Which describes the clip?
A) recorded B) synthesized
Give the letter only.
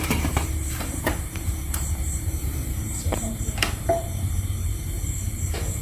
B